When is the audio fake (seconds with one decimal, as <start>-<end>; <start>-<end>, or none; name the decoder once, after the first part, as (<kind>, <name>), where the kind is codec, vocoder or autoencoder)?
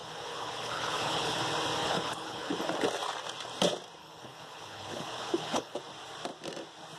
0.0-1.4 (codec, HILCodec); 1.8-2.6; 4.0-5.8